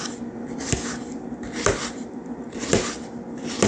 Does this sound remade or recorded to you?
recorded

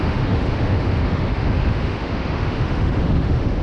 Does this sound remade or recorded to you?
remade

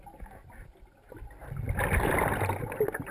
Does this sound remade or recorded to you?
recorded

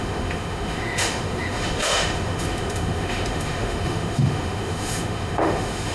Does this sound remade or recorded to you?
remade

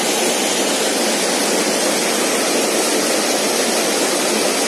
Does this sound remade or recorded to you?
recorded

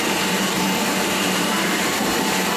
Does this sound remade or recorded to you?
remade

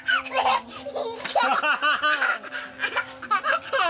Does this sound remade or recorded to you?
recorded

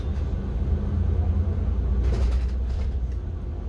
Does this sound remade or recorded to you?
recorded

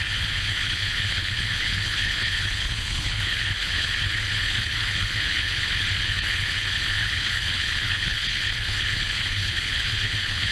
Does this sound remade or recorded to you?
remade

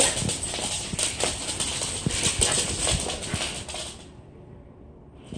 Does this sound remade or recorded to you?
recorded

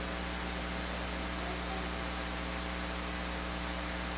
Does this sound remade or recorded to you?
recorded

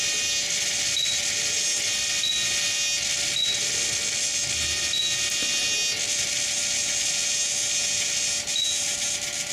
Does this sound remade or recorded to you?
recorded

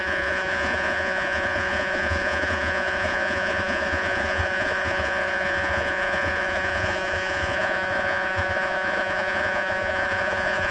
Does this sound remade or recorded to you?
remade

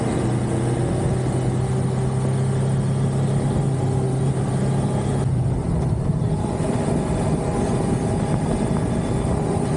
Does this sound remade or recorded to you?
recorded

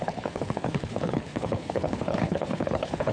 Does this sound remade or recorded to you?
remade